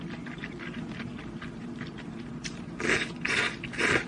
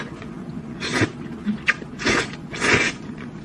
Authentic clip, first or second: first